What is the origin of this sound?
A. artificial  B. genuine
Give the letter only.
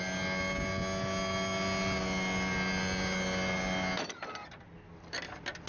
B